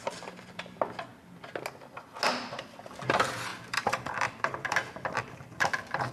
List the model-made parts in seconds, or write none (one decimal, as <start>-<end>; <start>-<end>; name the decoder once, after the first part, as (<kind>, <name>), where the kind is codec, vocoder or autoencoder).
0.0-1.1 (vocoder, BigVGAN v2); 2.6-6.1